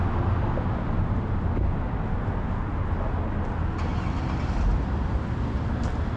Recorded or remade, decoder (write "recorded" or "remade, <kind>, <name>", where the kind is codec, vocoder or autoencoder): recorded